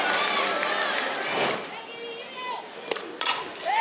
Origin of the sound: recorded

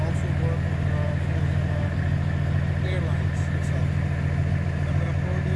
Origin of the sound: recorded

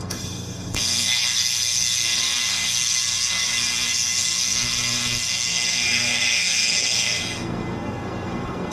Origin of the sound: remade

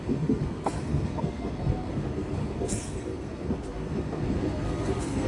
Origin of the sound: remade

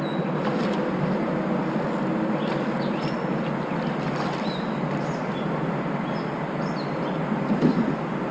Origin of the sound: recorded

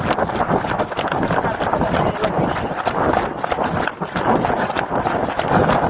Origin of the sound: recorded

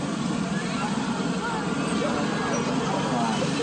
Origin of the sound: recorded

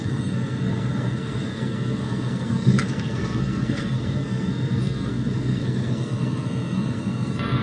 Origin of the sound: remade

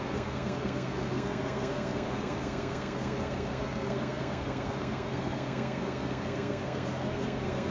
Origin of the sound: remade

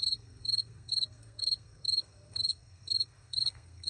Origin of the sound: remade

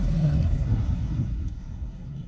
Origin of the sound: remade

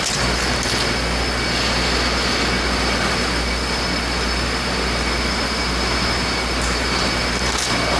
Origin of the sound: recorded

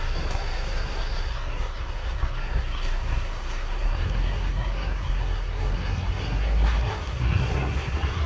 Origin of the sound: remade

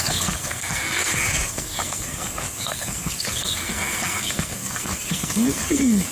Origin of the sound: remade